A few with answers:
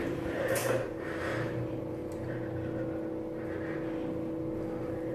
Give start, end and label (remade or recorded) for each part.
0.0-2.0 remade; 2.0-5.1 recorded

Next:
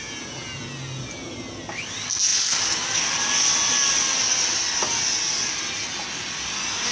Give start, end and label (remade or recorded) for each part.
0.0-6.9 recorded